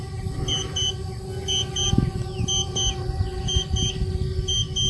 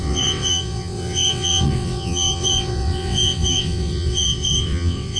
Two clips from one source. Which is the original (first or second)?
first